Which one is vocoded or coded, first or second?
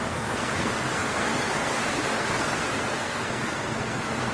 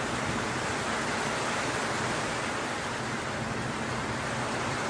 first